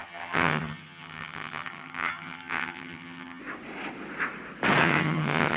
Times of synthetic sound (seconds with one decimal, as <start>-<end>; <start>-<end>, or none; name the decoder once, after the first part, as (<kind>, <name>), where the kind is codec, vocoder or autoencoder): 0.0-3.4 (vocoder, HiFi-GAN); 4.8-5.6